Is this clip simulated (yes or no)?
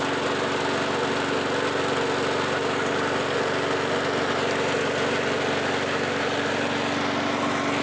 no